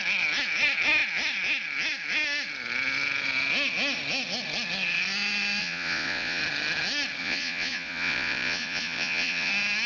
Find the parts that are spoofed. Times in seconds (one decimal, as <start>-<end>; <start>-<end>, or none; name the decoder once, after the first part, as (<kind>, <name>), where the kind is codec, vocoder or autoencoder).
5.6-6.4 (vocoder, Vocos); 7.2-9.5